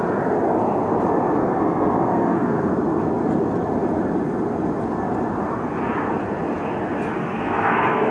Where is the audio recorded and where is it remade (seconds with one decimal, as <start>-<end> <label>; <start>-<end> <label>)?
0.0-1.4 recorded; 1.4-2.7 remade; 2.7-7.2 recorded; 7.2-8.1 remade